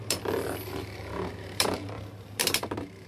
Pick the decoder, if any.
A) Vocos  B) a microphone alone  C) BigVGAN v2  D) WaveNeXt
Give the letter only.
C